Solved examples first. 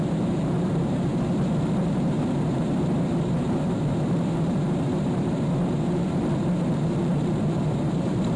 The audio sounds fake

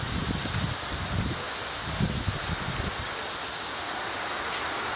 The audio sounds real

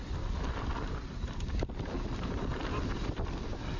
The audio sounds real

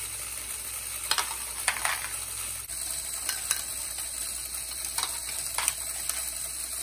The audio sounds real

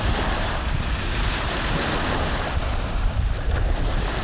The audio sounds fake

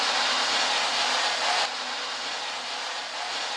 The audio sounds real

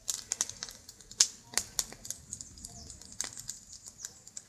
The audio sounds real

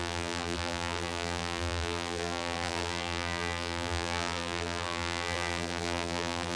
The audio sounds fake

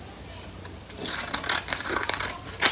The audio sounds fake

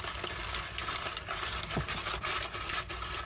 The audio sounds real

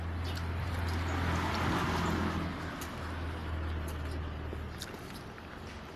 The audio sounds real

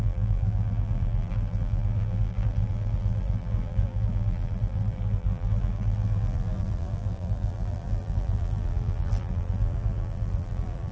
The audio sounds fake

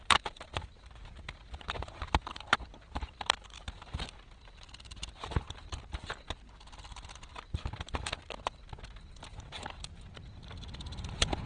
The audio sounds fake